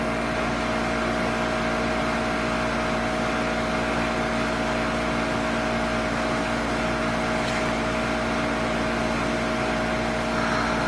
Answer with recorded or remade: recorded